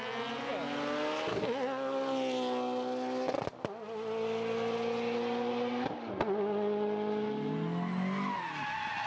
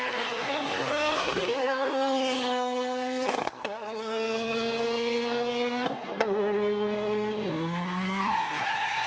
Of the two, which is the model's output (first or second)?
second